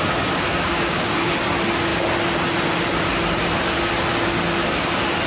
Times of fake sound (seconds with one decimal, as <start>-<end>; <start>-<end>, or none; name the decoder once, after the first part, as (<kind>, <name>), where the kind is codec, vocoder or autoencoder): 0.5-1.3 (codec, DAC)